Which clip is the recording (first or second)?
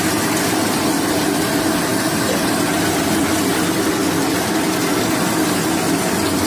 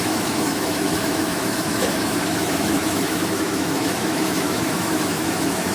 first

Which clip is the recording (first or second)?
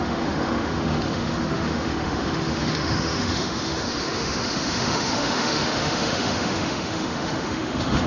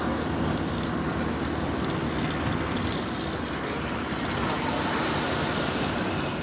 second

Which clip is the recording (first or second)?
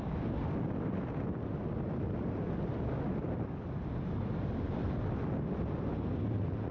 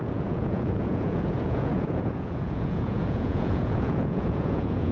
first